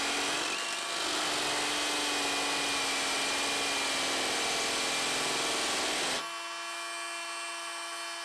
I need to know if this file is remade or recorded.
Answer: recorded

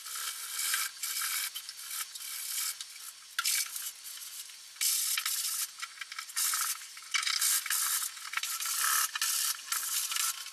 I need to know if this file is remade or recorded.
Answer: recorded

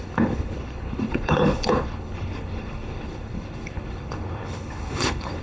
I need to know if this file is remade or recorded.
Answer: remade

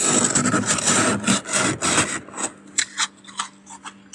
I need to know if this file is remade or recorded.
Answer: recorded